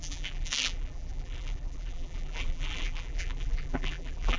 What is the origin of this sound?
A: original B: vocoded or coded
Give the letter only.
B